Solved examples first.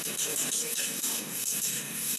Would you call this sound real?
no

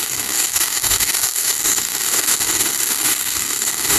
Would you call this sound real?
no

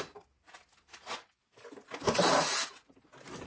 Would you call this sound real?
yes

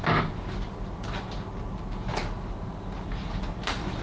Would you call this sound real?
yes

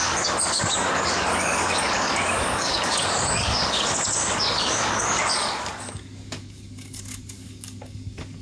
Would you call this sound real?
no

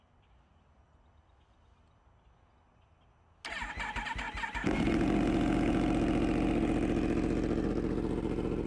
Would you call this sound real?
yes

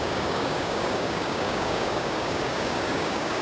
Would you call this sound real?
no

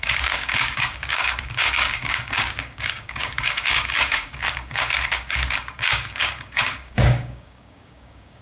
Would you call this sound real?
no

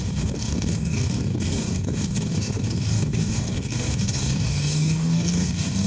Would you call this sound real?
no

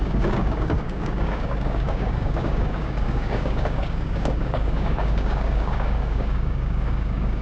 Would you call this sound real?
no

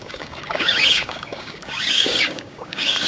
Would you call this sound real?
no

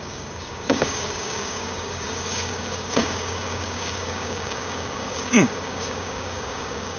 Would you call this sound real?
no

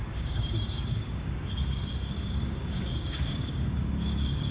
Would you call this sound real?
no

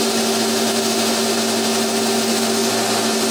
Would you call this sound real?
yes